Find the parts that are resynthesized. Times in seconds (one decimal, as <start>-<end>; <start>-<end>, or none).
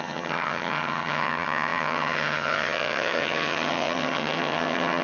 0.0-5.0